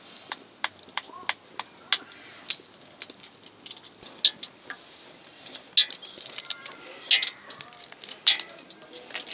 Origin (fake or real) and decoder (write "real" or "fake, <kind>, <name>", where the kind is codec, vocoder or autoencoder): real